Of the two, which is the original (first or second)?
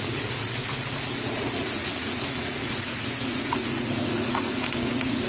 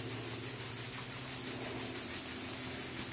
second